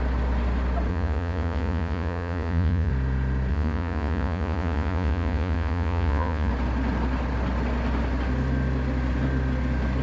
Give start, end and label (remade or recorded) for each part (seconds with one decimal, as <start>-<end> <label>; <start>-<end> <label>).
0.0-0.9 recorded; 0.9-2.9 remade; 2.9-3.5 recorded; 3.5-6.5 remade; 6.5-10.0 recorded